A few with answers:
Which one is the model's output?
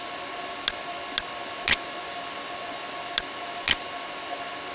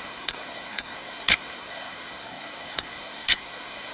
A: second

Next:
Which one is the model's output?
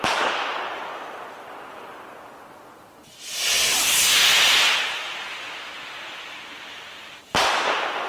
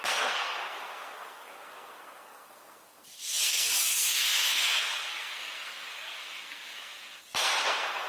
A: second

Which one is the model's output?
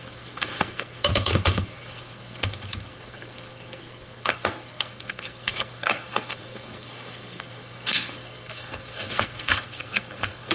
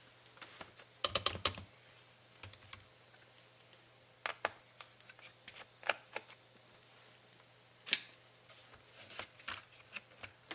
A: first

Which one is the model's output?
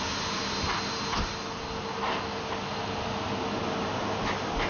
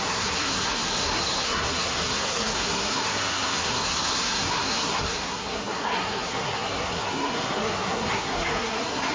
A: second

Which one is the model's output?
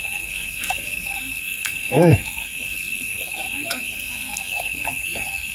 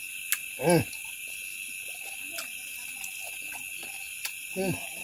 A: first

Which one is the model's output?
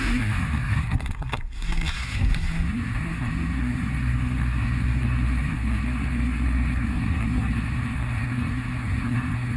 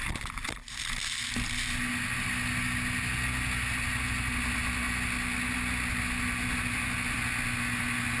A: first